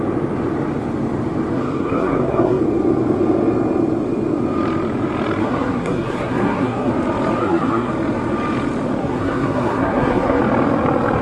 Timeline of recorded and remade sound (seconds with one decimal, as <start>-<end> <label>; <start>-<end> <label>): 0.0-1.5 recorded; 1.5-2.6 remade; 2.6-5.4 recorded; 5.4-6.9 remade; 6.9-7.4 recorded; 7.4-7.9 remade; 7.9-9.0 recorded; 9.0-10.4 remade; 10.4-11.2 recorded